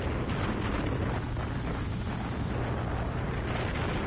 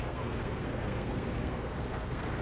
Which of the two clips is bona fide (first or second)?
first